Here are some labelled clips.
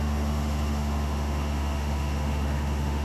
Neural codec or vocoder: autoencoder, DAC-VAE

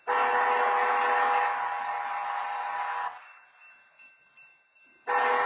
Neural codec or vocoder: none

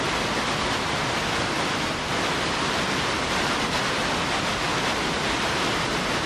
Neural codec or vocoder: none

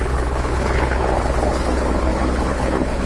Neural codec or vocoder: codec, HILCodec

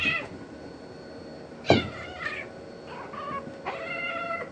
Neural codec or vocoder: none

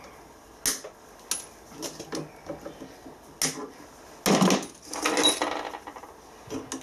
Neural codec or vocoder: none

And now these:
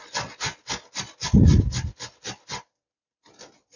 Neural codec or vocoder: none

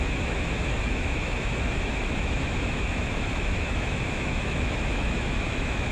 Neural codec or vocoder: autoencoder, DAC-VAE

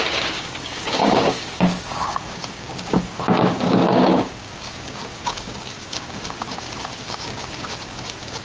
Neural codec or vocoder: codec, DAC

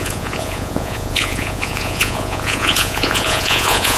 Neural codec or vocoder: vocoder, Vocos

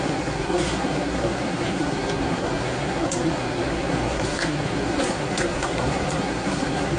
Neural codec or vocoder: codec, SNAC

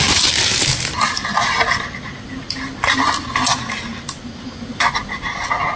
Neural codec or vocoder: none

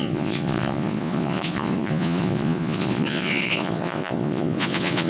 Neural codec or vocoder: vocoder, Vocos